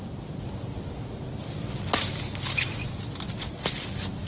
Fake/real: real